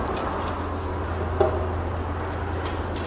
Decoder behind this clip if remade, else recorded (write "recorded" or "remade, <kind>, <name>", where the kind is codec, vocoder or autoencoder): recorded